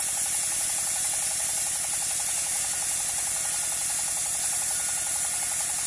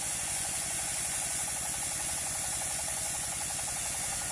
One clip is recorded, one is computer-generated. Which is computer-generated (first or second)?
second